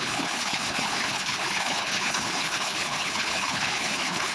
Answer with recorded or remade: remade